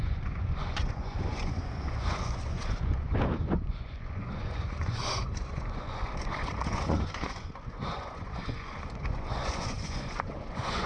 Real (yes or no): no